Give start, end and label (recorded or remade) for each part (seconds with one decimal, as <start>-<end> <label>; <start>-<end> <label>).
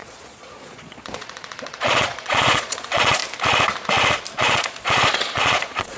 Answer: 0.0-3.2 remade; 3.2-4.4 recorded; 4.4-6.0 remade